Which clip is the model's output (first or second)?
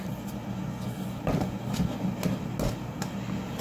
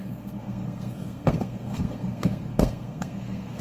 second